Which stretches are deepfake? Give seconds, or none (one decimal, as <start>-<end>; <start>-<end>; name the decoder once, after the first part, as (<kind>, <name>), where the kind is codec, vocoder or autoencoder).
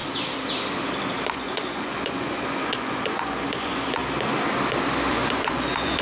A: 1.3-4.0 (vocoder, Vocos); 5.1-6.0